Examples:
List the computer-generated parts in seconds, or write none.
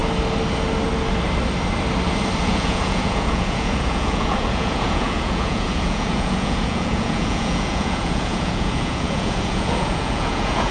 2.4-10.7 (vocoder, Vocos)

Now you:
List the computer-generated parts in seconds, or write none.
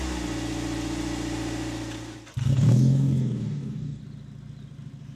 2.4-4.0 (codec, DAC)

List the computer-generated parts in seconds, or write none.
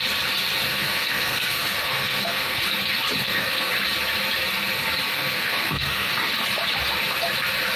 0.7-2.6 (codec, SNAC); 3.2-3.7; 5.1-6.1